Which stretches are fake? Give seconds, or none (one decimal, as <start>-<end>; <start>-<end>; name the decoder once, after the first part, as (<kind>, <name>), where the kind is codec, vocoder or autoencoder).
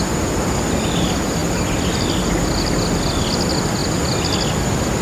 none